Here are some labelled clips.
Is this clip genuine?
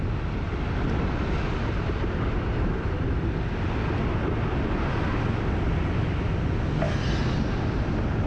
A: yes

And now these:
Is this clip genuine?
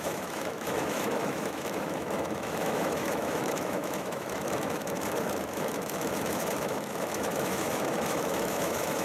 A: no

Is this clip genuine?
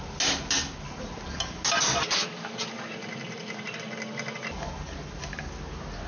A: yes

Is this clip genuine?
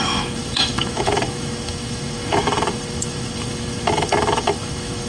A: no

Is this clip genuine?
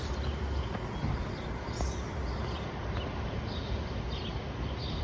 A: yes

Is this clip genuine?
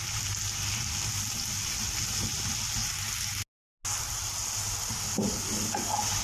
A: yes